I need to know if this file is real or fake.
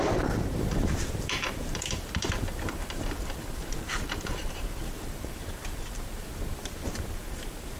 fake